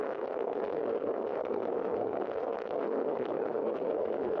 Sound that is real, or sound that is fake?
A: fake